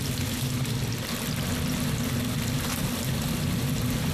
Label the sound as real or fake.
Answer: real